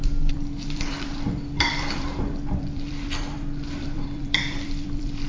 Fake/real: fake